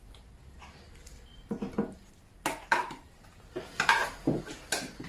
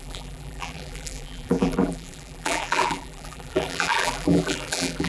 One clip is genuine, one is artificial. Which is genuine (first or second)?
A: first